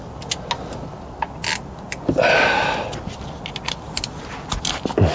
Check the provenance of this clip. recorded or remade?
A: recorded